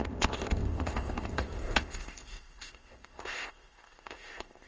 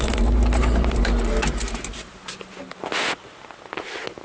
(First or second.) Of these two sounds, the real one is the second